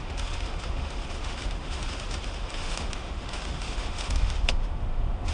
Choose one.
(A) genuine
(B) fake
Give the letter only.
B